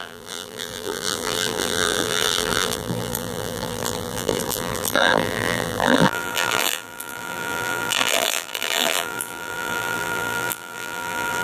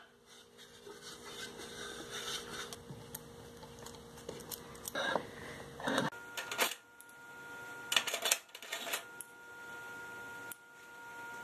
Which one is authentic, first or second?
second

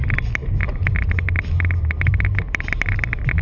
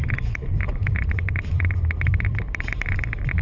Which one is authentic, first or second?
first